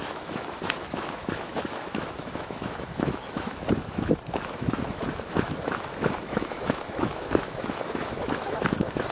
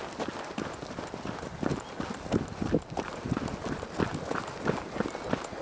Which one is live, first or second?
second